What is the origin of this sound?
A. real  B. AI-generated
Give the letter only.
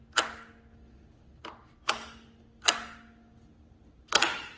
A